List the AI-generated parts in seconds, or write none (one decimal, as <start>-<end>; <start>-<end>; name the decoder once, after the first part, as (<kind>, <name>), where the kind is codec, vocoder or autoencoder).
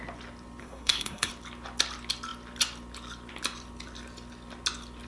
0.6-1.3 (codec, SNAC)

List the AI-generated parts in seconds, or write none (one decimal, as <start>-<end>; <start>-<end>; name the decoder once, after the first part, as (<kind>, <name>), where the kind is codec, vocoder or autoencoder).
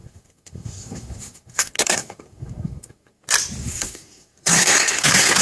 0.0-3.2 (codec, SNAC); 3.6-5.4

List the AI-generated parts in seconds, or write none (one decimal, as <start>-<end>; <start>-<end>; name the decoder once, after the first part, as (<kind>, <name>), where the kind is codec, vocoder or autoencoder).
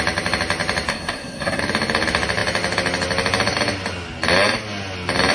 0.9-1.6 (codec, SNAC)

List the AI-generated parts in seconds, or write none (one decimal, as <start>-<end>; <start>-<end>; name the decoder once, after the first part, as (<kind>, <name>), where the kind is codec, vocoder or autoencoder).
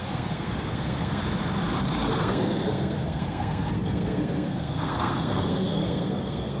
0.0-1.2 (codec, SNAC); 2.1-6.6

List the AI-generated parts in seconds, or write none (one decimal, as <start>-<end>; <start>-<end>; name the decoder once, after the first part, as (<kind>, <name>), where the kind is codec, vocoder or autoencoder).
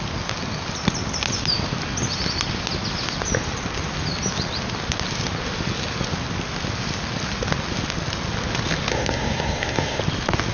8.9-10.0 (codec, SNAC)